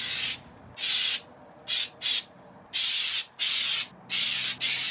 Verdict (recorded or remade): recorded